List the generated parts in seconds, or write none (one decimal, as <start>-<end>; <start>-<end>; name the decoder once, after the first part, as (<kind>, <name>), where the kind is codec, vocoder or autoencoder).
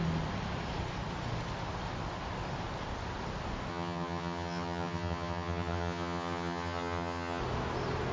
3.7-7.4 (vocoder, HiFi-GAN)